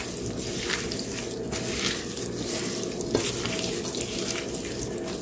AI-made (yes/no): no